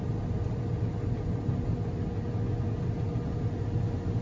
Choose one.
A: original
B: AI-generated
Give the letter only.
A